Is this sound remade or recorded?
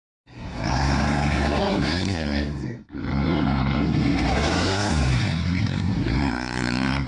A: remade